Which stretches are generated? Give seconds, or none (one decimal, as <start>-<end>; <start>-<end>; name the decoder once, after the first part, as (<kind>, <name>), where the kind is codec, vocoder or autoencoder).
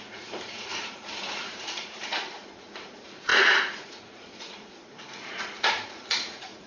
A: 0.0-6.7 (vocoder, Vocos)